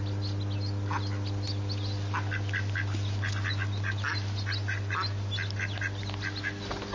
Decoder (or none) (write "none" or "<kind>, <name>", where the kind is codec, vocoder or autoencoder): none